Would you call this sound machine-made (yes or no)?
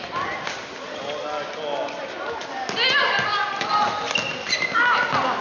no